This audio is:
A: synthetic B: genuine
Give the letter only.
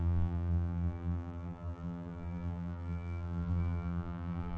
A